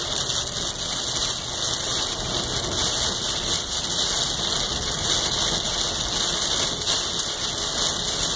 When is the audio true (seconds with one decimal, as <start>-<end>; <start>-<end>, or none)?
0.0-8.4